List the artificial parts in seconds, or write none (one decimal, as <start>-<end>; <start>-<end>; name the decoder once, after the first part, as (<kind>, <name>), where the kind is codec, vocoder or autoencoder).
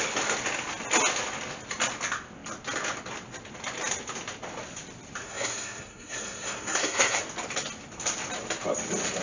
5.2-7.2 (codec, SNAC)